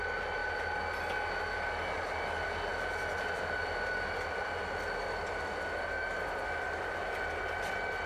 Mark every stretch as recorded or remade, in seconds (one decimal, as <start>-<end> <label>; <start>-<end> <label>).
0.0-8.1 recorded